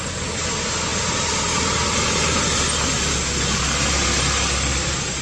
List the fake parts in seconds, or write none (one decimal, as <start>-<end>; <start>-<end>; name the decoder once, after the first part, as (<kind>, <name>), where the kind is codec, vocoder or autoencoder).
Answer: none